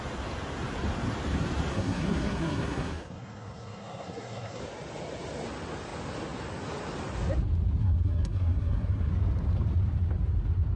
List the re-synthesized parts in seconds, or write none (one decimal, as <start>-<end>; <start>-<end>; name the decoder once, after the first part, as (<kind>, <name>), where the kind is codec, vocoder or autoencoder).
1.7-4.6 (codec, SNAC); 7.8-9.1